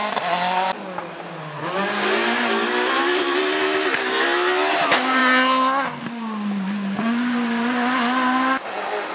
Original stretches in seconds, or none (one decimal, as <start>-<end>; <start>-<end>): 0.0-9.1